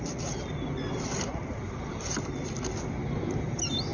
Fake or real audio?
real